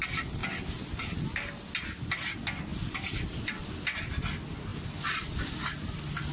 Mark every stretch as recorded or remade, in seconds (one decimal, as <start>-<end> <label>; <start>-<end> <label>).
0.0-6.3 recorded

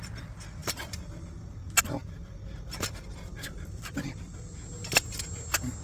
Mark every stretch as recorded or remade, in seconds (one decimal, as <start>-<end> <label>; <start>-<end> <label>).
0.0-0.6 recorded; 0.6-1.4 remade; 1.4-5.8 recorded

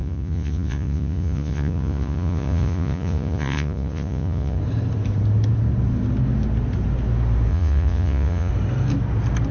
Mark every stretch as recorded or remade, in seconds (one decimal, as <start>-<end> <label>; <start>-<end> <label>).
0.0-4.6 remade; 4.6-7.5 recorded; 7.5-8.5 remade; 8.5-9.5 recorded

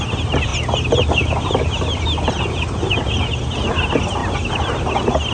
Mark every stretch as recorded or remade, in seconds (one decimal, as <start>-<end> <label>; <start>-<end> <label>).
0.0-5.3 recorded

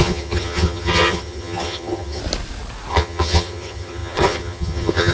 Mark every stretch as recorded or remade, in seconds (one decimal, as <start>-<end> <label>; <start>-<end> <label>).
0.0-2.2 remade; 2.2-2.9 recorded; 2.9-5.1 remade

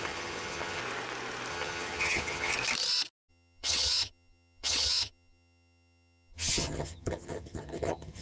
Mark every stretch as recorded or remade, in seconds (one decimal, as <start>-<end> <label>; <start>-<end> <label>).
0.0-0.8 remade; 0.8-1.5 recorded; 1.5-2.5 remade; 2.5-3.3 recorded; 3.3-8.2 remade

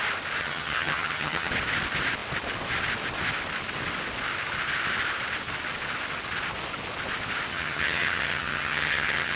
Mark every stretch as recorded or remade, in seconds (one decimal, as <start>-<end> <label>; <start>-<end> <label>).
0.0-0.4 recorded; 0.4-1.5 remade; 1.5-7.5 recorded; 7.5-9.4 remade

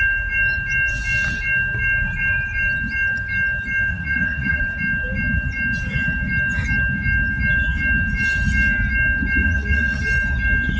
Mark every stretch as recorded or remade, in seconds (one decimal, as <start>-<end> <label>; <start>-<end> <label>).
0.0-3.9 recorded; 3.9-4.6 remade; 4.6-9.4 recorded; 9.4-10.0 remade; 10.0-10.8 recorded